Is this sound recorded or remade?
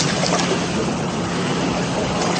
recorded